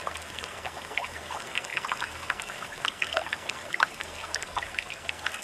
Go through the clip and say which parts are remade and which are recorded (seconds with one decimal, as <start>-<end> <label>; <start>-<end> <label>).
0.0-5.4 remade

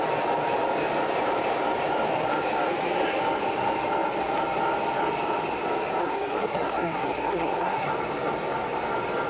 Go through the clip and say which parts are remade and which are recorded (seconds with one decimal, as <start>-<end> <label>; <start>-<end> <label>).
0.0-6.0 recorded; 6.0-7.9 remade; 7.9-9.3 recorded

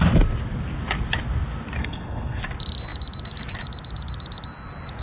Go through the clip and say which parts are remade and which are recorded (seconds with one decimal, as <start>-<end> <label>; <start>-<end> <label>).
0.0-1.8 recorded; 1.8-2.4 remade; 2.4-5.0 recorded

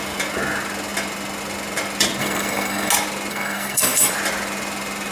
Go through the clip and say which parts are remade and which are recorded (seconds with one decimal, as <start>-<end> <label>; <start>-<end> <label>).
0.0-2.2 recorded; 2.2-2.9 remade; 2.9-3.3 recorded; 3.3-4.1 remade; 4.1-5.1 recorded